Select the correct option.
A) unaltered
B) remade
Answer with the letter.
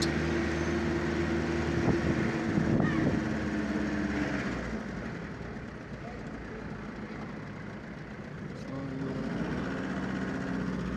A